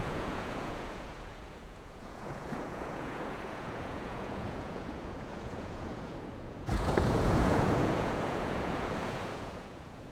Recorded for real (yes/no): no